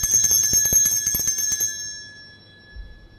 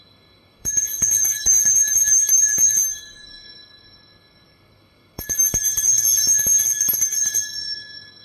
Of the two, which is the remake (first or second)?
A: second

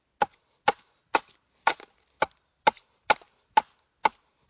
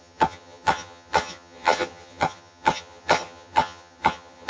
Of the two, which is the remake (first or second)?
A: second